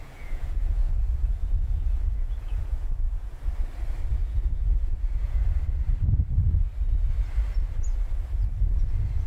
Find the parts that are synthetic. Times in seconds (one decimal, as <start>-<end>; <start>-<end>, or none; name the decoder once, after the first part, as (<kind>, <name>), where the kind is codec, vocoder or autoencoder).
0.0-3.4 (vocoder, Vocos); 4.1-5.4